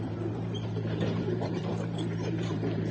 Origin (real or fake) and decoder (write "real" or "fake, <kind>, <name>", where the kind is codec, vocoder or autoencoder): fake, vocoder, BigVGAN v2